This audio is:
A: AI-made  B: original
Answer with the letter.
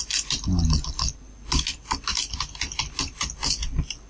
B